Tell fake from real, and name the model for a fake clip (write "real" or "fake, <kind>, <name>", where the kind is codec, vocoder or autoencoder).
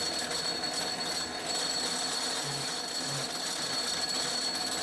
real